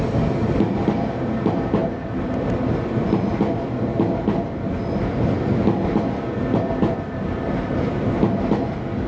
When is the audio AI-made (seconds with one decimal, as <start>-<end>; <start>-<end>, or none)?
none